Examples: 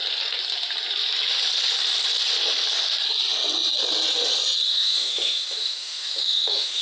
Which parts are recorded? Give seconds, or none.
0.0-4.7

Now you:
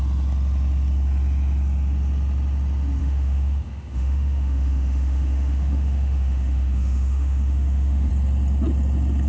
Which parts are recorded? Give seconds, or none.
0.0-3.0; 8.1-9.3

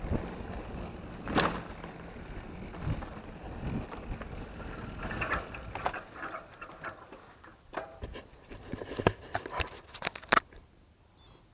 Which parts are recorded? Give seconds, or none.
0.0-7.5; 9.7-11.5

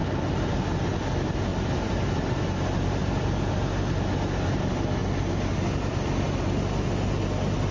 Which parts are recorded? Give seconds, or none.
0.8-1.5; 2.5-3.0; 3.5-7.7

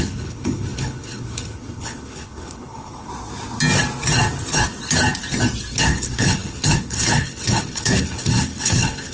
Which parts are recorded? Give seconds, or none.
3.1-5.8